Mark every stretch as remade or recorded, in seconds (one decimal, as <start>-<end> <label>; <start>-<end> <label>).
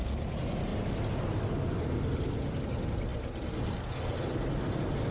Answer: 0.0-0.7 recorded; 0.7-2.3 remade; 2.3-5.1 recorded